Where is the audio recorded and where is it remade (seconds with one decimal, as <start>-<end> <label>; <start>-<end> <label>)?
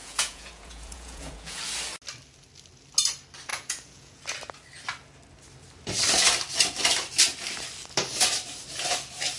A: 0.0-1.6 remade; 1.6-3.5 recorded; 3.5-4.2 remade; 4.2-9.4 recorded